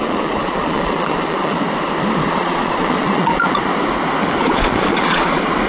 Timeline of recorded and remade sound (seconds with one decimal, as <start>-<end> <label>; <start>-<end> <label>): 0.0-1.6 remade; 1.6-2.3 recorded; 2.3-3.7 remade; 3.7-4.4 recorded; 4.4-5.7 remade